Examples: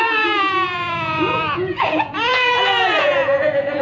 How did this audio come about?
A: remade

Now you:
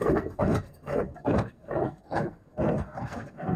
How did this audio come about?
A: remade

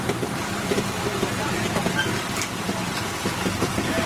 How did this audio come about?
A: recorded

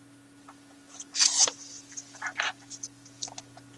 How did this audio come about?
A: recorded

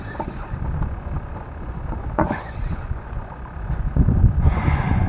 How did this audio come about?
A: remade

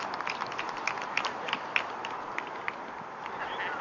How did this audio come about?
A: recorded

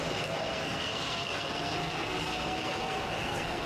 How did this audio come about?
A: remade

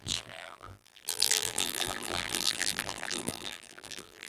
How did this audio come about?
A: remade